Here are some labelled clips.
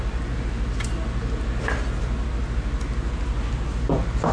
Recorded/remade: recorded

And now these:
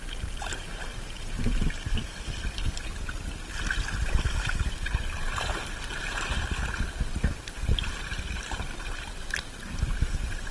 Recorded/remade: remade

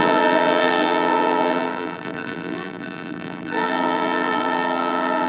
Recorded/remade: remade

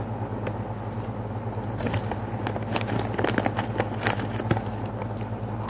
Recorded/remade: recorded